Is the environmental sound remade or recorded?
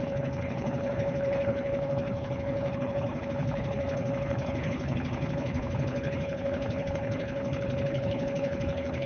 remade